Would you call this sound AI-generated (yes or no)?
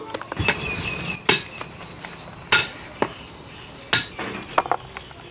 no